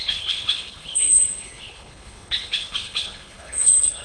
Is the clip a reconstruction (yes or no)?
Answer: yes